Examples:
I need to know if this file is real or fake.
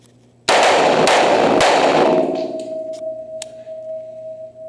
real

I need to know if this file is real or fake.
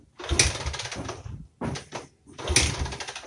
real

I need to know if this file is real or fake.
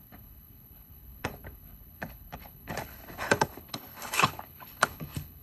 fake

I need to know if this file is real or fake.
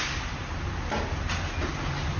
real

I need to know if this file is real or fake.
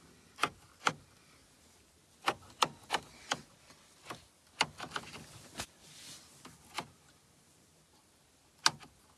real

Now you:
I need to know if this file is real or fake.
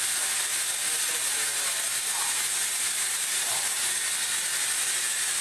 real